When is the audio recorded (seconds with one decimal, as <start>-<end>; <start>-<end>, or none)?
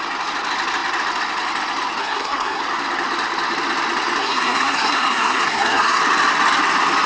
0.0-2.0; 2.6-4.2; 6.0-7.1